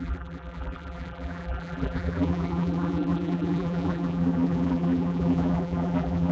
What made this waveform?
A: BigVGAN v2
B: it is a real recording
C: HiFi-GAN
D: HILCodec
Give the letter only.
A